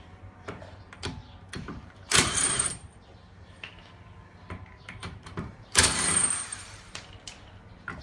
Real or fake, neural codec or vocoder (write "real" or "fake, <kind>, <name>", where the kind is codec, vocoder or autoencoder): fake, vocoder, BigVGAN v2